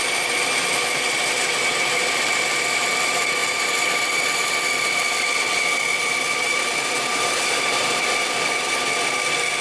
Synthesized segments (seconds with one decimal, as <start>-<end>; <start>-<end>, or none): 7.1-8.0